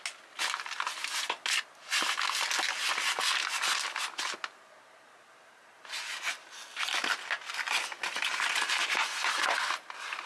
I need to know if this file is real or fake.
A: real